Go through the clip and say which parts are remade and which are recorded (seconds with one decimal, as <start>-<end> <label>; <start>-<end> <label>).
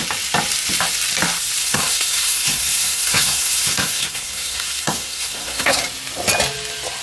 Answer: 0.0-1.6 recorded; 1.6-5.8 remade; 5.8-7.0 recorded